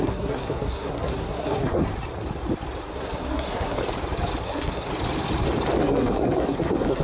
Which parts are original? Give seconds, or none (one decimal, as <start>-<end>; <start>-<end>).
1.9-2.9; 3.8-4.4; 4.9-5.8

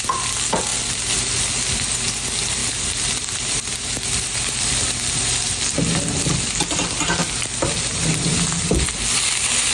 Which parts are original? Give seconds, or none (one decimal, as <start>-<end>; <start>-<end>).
0.0-0.7; 1.2-2.6; 3.5-9.7

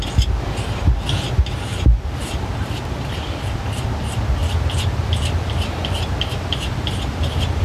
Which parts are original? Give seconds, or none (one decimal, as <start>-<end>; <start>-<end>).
0.0-1.7; 3.6-4.4

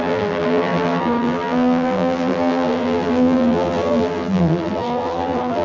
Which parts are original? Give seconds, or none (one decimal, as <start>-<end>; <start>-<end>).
none

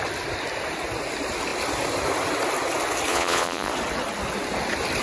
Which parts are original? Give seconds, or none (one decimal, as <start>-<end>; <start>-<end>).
0.0-3.1; 3.7-5.0